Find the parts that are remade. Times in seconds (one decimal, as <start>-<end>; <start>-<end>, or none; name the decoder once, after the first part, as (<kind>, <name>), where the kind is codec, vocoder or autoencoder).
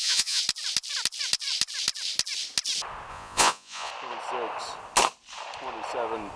0.0-0.4 (vocoder, Vocos); 3.1-3.9